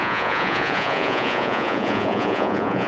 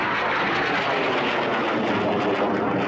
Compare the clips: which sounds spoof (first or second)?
first